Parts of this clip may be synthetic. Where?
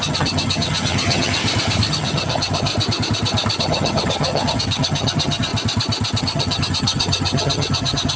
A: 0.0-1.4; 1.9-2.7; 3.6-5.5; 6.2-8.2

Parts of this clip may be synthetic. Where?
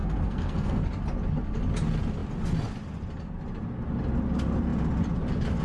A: 0.0-0.8